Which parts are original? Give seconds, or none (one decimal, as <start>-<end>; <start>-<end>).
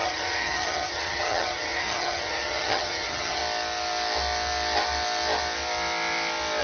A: 3.4-6.6